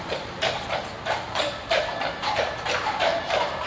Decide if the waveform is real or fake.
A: fake